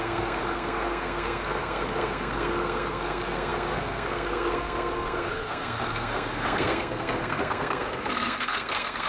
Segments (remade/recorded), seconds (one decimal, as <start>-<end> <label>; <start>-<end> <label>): 0.0-9.1 remade